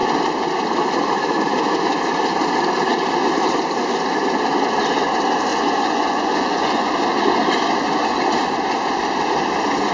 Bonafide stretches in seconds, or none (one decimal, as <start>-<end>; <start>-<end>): 0.0-5.5; 6.9-9.9